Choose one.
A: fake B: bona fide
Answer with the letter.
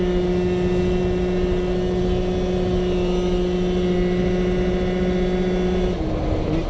B